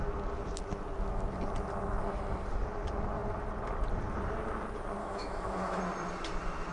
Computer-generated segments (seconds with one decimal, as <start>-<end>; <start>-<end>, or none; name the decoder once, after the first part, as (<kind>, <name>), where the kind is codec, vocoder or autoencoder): 5.0-5.8 (autoencoder, DAC-VAE)

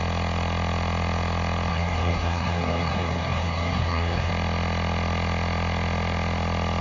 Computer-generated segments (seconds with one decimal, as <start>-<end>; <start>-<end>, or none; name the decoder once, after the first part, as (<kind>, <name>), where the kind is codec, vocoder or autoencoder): 1.7-4.3 (codec, SNAC)

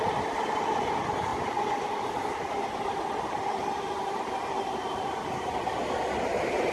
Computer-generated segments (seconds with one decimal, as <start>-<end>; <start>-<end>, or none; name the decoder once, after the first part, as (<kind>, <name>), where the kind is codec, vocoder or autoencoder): none

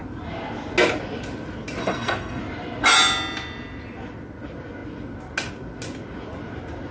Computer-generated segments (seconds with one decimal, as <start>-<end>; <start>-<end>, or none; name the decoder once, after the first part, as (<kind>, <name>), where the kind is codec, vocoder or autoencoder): 1.8-2.4 (codec, SNAC)

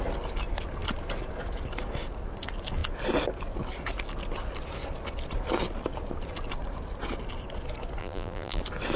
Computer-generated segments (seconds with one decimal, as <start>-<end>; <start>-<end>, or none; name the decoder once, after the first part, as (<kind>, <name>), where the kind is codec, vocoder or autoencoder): 8.0-8.6 (vocoder, BigVGAN v2)

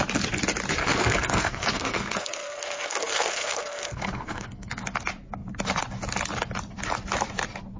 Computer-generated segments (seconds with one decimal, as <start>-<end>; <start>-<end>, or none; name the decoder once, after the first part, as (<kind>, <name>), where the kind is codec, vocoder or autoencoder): 0.8-4.7 (codec, SNAC)

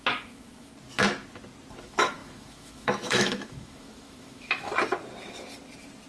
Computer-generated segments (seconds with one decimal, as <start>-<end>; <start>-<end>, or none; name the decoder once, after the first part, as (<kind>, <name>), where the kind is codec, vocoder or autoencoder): 0.0-0.7 (autoencoder, DAC-VAE); 1.8-4.7

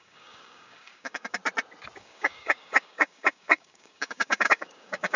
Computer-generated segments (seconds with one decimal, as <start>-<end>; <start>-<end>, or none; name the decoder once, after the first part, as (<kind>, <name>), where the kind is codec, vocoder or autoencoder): 0.0-1.4 (codec, DAC); 2.0-5.2